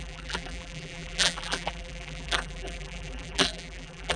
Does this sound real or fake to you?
fake